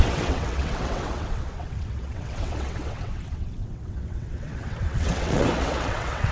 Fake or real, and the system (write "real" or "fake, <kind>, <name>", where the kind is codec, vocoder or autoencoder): fake, vocoder, WaveNeXt